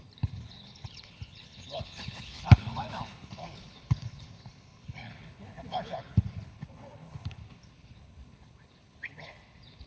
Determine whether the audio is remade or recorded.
remade